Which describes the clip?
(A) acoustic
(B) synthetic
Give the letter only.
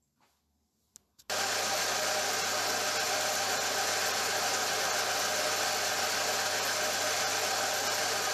A